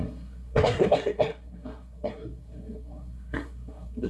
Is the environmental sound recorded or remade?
remade